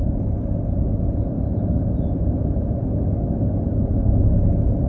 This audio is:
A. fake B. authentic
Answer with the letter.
B